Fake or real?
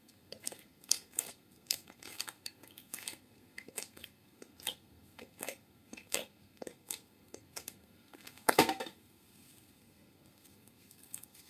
fake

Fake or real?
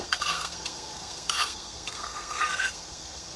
fake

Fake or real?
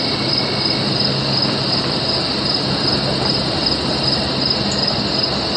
real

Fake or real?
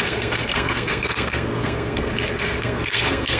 fake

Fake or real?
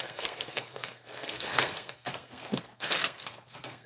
fake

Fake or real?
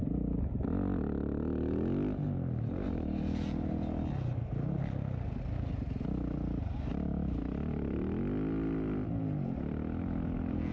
real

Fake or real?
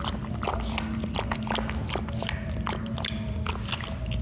real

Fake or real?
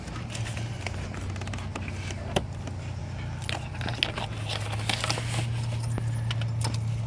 real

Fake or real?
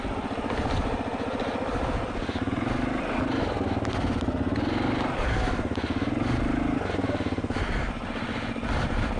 real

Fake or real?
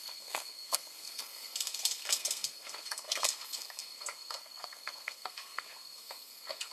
fake